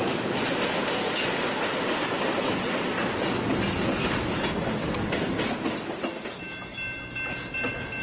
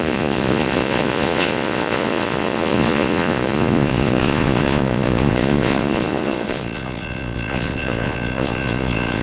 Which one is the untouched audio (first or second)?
first